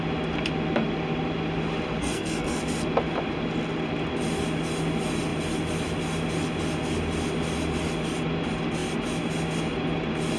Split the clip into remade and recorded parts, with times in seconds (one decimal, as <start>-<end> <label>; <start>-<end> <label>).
0.0-2.0 recorded; 2.0-2.6 remade; 2.6-10.4 recorded